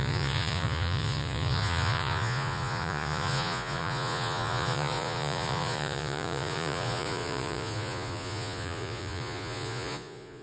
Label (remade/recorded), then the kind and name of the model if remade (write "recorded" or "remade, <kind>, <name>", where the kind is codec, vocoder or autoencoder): remade, vocoder, Vocos